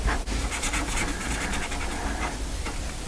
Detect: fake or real real